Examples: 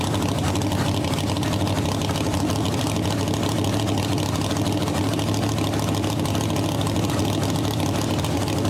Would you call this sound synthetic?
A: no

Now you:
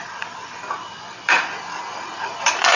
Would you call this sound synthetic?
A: yes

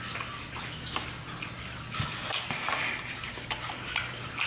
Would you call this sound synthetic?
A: no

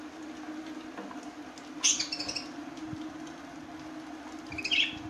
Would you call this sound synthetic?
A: no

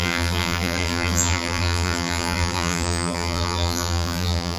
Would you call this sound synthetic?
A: yes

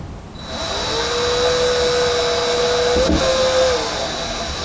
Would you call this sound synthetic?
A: no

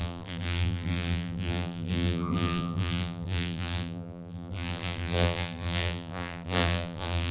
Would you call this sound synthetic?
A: yes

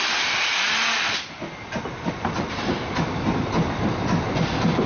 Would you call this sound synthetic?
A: no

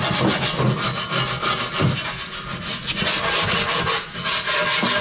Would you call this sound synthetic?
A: no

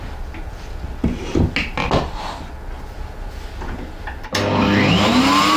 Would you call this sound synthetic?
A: no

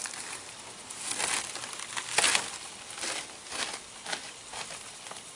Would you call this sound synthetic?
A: no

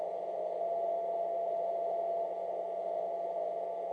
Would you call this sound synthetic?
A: no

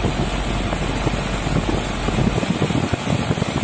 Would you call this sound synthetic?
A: no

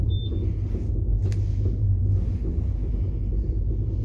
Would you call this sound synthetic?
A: no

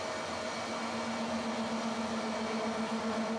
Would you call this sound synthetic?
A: no